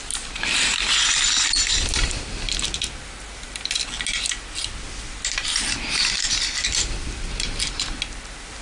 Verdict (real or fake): real